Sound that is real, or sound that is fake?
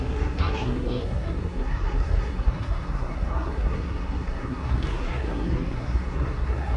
fake